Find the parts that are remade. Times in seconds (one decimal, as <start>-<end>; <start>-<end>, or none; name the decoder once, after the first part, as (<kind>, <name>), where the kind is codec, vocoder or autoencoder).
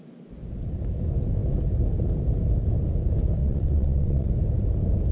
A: 3.4-4.3 (vocoder, WaveNeXt)